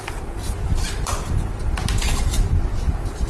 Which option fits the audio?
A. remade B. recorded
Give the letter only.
B